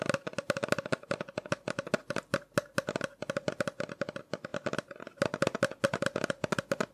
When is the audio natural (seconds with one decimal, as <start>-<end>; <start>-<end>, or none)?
0.0-6.9